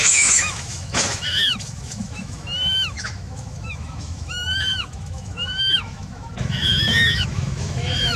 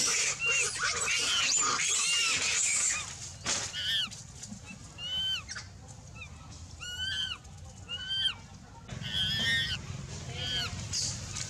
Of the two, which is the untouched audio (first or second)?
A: second